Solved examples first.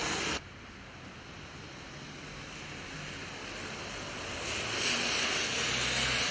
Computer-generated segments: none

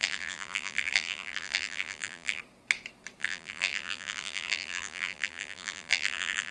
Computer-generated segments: 0.0-2.4 (vocoder, BigVGAN v2); 3.2-6.5

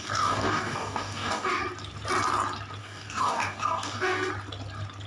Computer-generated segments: 0.0-1.6 (codec, DAC); 2.8-4.3

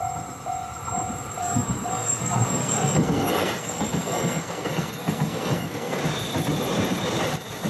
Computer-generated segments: 1.4-6.0 (codec, SNAC)